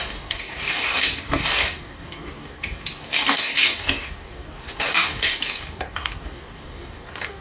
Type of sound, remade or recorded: remade